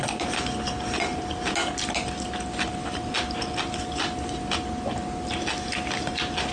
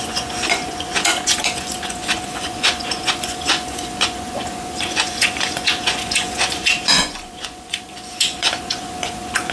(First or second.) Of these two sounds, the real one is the first